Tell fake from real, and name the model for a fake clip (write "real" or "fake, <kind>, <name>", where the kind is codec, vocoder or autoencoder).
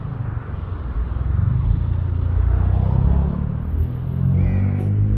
real